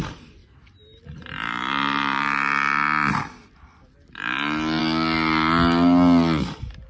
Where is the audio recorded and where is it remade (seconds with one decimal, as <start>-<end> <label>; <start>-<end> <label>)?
0.0-6.9 recorded